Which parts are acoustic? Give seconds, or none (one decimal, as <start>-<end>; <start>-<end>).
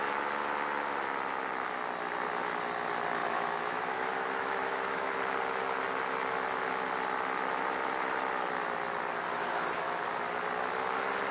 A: 0.0-3.2; 5.1-9.3; 10.0-11.3